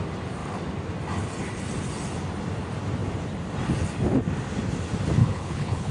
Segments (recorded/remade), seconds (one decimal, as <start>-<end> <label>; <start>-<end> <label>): 0.0-5.2 recorded; 5.2-5.9 remade